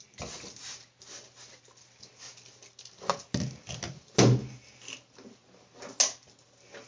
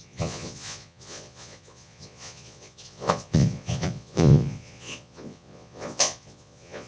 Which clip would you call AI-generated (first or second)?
second